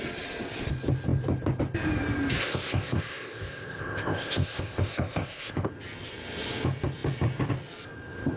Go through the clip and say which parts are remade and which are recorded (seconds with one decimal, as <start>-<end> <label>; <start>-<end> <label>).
0.0-2.4 recorded; 2.4-5.7 remade; 5.7-8.4 recorded